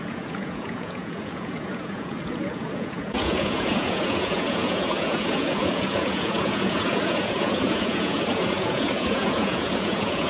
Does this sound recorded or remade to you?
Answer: remade